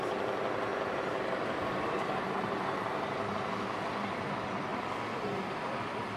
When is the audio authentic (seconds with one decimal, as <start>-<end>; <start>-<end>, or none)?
0.0-0.7; 3.3-6.2